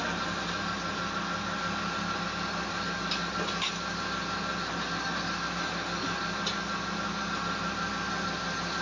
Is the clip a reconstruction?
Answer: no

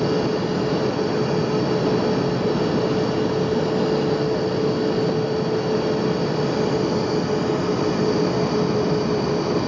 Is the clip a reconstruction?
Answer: no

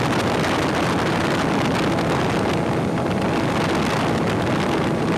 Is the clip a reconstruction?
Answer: no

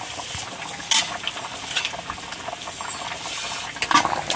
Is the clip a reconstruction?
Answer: no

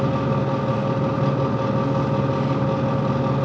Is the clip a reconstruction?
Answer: no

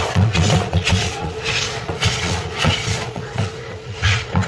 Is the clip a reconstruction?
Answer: yes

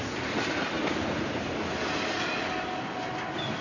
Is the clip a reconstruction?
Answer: no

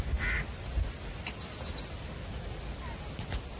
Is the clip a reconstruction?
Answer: no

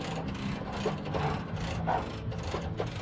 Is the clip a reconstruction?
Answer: no